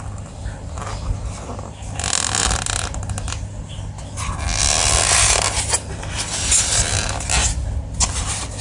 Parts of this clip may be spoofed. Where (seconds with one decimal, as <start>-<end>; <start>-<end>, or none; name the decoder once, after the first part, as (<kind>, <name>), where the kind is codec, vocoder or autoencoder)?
none